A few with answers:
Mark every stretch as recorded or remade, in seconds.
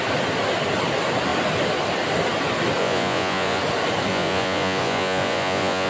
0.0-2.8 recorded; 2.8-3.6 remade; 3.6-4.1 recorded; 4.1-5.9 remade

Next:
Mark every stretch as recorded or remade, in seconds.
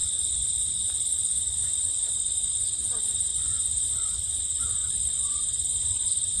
0.0-6.4 recorded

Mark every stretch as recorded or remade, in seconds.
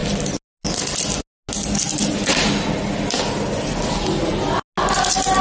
0.0-5.4 recorded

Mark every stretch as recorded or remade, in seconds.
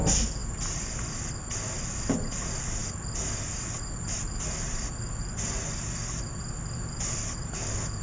0.0-8.0 recorded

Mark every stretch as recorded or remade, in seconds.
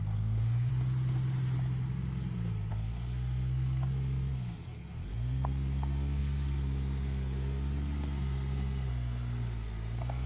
0.0-0.7 remade; 0.7-2.7 recorded; 2.7-10.3 remade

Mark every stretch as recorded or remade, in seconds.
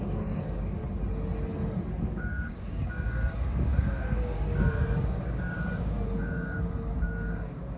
0.0-0.8 remade; 0.8-2.1 recorded; 2.1-7.8 remade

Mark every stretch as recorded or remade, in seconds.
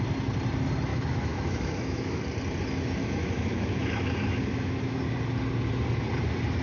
0.0-0.9 recorded; 0.9-2.2 remade; 2.2-3.0 recorded; 3.0-5.0 remade; 5.0-6.6 recorded